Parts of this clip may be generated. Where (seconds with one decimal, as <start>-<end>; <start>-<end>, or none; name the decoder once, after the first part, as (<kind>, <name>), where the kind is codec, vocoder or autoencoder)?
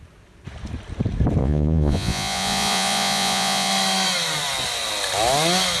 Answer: 1.4-3.7 (vocoder, Vocos)